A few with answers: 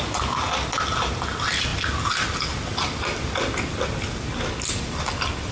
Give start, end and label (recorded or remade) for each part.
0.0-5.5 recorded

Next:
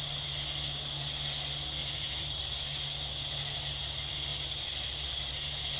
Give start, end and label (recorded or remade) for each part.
0.0-1.8 recorded; 1.8-2.6 remade; 2.6-5.8 recorded

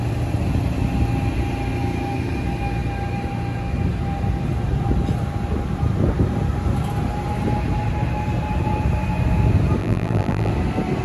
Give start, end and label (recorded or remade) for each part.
0.0-9.8 recorded; 9.8-10.5 remade; 10.5-11.0 recorded

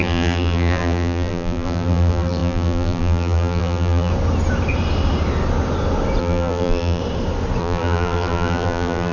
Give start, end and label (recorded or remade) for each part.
0.0-4.1 remade; 4.1-6.2 recorded; 6.2-7.0 remade; 7.0-7.6 recorded; 7.6-9.1 remade

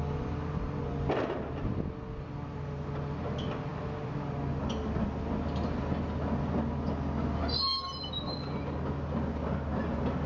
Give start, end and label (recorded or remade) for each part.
0.0-10.3 recorded